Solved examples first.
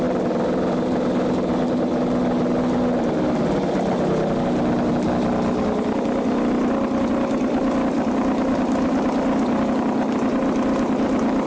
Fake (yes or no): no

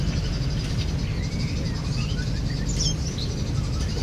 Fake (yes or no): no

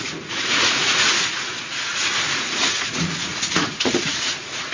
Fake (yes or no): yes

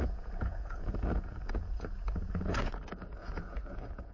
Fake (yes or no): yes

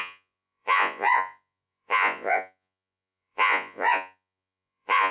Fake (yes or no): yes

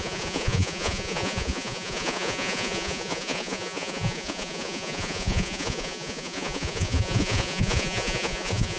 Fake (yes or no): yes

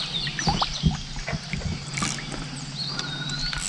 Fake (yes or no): no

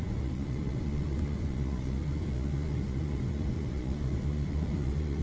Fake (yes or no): yes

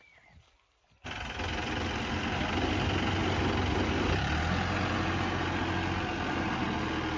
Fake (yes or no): no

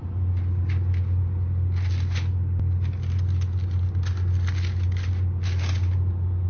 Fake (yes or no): no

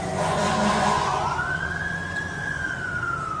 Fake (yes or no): yes